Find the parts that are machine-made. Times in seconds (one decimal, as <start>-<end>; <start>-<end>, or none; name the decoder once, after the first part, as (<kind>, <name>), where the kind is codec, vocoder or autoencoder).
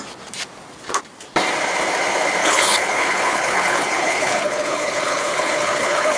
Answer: 2.4-6.2 (codec, HILCodec)